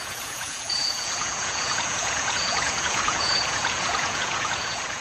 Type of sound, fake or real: fake